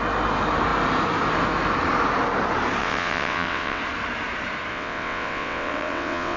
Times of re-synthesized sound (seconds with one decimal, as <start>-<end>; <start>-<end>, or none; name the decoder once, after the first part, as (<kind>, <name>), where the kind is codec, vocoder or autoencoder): 2.8-3.8 (vocoder, WaveNeXt); 4.7-6.4